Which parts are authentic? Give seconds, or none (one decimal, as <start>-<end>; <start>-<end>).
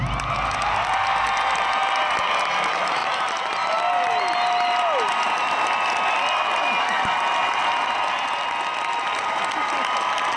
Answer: 0.0-10.4